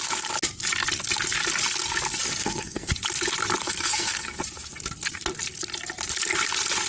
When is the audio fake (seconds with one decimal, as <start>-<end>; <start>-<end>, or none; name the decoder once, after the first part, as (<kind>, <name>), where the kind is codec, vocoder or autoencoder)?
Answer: 2.4-2.9 (codec, SNAC); 3.6-4.4